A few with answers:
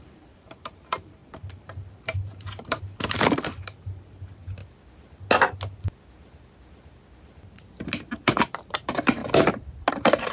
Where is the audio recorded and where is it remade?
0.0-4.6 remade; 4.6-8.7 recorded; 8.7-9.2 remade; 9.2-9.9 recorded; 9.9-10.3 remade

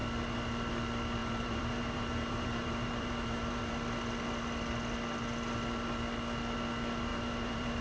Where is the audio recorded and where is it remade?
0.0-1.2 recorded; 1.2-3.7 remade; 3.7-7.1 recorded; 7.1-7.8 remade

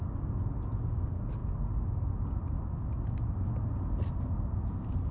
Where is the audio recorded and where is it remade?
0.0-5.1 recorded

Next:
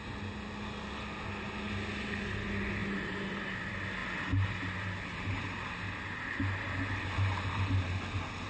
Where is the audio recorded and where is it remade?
0.0-8.5 recorded

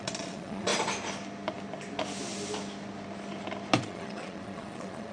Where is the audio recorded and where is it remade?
0.0-0.7 remade; 0.7-3.8 recorded; 3.8-5.1 remade